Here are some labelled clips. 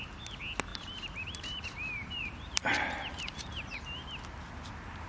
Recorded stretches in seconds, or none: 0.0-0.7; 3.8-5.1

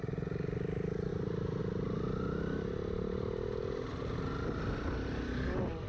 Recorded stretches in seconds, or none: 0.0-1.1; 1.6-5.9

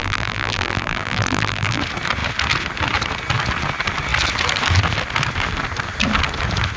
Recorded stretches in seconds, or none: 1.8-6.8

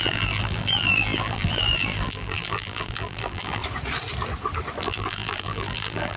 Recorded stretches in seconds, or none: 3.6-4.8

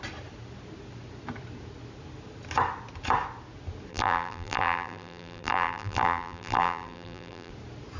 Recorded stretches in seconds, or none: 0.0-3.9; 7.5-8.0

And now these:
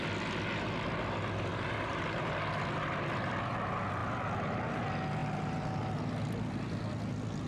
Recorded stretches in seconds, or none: 0.0-1.5; 2.3-5.2; 5.9-7.5

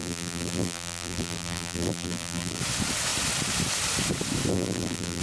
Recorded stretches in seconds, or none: 2.6-4.5

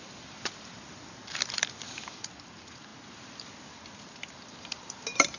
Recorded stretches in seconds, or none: 2.9-3.5